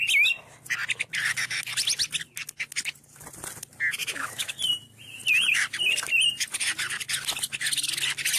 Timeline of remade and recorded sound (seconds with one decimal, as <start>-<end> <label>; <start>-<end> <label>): 0.0-4.0 recorded; 4.0-4.5 remade; 4.5-8.4 recorded